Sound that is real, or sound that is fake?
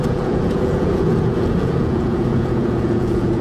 fake